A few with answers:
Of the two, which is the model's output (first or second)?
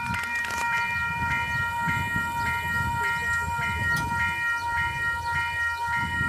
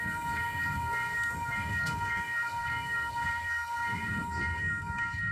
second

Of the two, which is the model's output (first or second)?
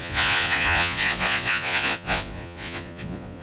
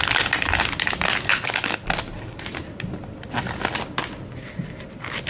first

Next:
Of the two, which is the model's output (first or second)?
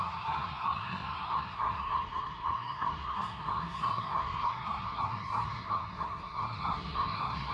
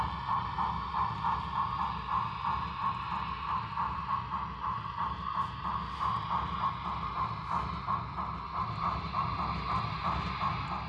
first